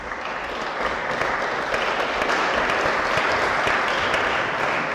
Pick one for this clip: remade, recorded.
recorded